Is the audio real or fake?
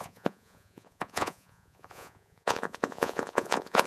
fake